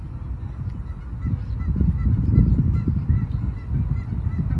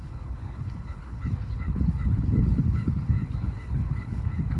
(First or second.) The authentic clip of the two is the first